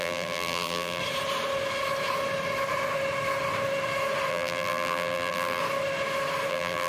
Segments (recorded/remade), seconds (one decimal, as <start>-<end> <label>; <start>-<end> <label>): 0.0-1.0 remade; 1.0-4.3 recorded; 4.3-5.6 remade; 5.6-6.5 recorded; 6.5-6.9 remade